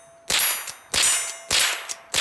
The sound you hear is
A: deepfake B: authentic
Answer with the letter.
B